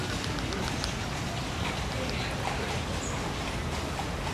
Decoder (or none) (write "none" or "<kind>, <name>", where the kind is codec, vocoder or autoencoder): none